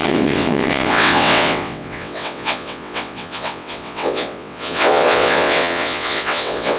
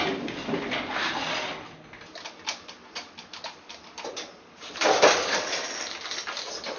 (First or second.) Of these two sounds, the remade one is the first